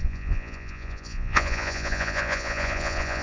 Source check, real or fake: fake